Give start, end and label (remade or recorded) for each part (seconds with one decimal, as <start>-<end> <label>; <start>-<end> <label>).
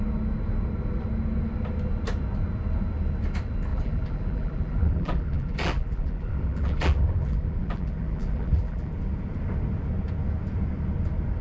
0.0-3.7 recorded; 3.7-8.9 remade; 8.9-11.4 recorded